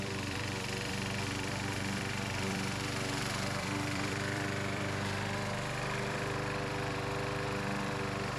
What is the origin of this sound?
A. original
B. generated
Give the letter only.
B